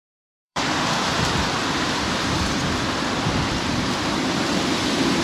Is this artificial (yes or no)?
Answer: yes